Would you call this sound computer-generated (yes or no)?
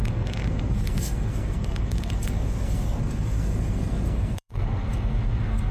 yes